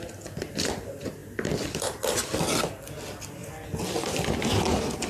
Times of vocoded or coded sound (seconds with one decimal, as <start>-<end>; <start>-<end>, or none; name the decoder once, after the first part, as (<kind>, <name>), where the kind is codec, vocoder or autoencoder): none